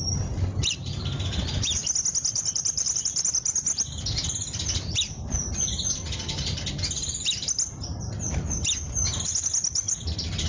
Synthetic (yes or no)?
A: no